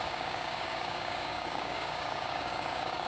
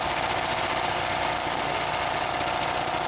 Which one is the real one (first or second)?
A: second